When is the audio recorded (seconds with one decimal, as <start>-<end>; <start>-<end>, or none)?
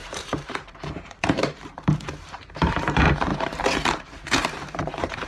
none